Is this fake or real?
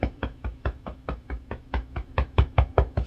fake